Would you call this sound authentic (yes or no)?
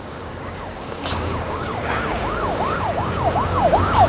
no